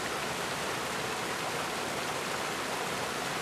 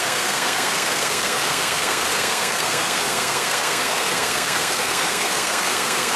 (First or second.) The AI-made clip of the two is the second